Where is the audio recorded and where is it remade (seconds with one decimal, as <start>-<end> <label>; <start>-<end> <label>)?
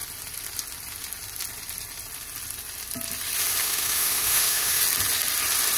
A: 0.0-3.6 recorded; 3.6-4.8 remade; 4.8-5.8 recorded